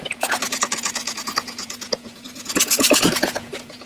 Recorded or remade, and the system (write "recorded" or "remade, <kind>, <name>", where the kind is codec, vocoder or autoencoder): remade, vocoder, Vocos